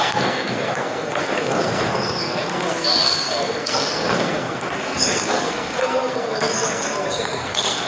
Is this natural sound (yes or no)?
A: no